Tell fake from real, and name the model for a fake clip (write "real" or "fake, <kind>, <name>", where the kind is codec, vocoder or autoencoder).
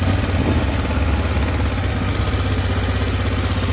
real